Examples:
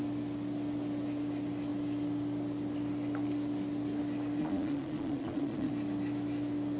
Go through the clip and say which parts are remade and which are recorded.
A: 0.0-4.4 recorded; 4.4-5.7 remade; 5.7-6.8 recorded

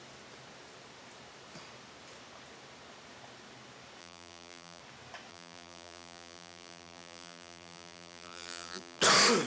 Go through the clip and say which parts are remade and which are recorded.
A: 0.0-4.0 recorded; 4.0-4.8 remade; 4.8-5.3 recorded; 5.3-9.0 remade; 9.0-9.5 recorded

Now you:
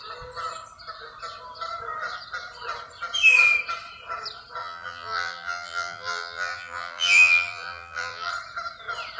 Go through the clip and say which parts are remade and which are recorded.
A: 0.0-4.6 recorded; 4.6-8.3 remade; 8.3-9.2 recorded

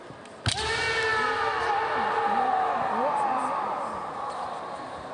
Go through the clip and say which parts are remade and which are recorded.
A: 0.0-5.1 recorded

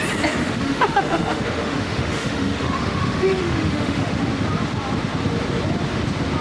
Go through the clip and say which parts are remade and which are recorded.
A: 0.0-0.4 recorded; 0.4-4.2 remade; 4.2-6.4 recorded